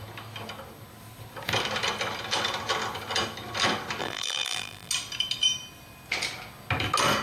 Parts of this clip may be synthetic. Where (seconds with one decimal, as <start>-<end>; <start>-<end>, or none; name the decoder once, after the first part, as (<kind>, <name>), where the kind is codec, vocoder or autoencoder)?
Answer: 4.0-4.9 (vocoder, BigVGAN v2)